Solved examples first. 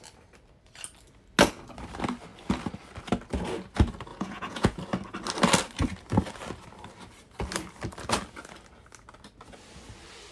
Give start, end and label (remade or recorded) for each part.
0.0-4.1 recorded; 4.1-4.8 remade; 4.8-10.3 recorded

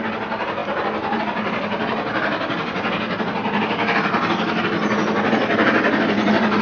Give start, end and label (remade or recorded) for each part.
0.0-6.6 recorded

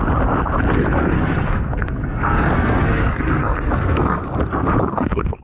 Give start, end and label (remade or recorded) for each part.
0.0-1.0 recorded; 1.0-4.2 remade; 4.2-4.9 recorded; 4.9-5.4 remade

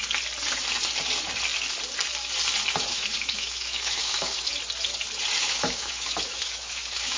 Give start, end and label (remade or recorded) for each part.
0.0-2.9 recorded; 2.9-4.5 remade; 4.5-5.4 recorded; 5.4-7.2 remade

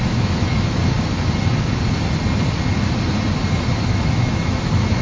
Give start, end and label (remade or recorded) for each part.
0.0-0.8 remade; 0.8-3.8 recorded; 3.8-5.0 remade

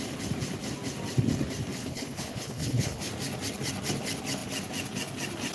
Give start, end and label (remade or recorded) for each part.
0.0-1.8 recorded; 1.8-3.1 remade; 3.1-5.5 recorded

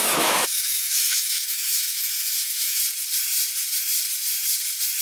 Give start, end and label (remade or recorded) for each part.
0.0-2.8 remade; 2.8-5.0 recorded